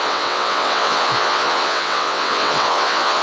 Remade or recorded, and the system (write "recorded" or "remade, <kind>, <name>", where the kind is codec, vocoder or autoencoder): remade, vocoder, WaveNeXt